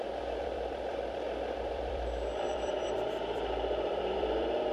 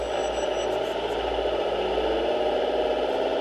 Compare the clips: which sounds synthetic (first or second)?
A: first